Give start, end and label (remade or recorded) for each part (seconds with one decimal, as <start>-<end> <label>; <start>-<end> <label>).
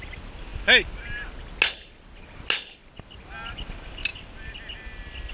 0.0-5.3 recorded